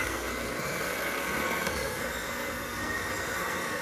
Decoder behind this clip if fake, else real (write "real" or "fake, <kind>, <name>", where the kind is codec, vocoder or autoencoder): fake, codec, SNAC